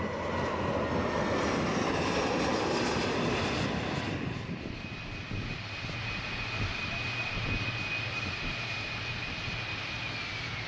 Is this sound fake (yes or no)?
no